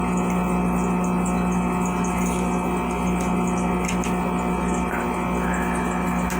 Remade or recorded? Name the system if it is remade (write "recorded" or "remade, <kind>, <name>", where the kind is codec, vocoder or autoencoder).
recorded